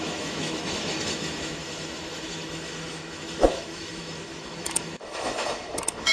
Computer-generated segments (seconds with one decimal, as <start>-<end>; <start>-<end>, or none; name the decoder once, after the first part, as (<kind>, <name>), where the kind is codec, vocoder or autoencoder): 0.0-6.1 (autoencoder, DAC-VAE)